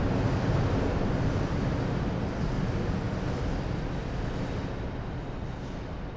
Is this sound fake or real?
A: real